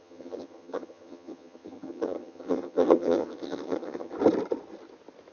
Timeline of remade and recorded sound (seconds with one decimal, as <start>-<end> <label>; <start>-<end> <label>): 0.0-4.1 remade; 4.1-5.3 recorded